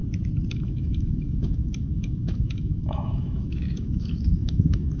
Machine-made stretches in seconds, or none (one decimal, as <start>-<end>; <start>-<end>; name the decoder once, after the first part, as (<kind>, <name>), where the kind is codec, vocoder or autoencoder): 0.5-5.0 (autoencoder, DAC-VAE)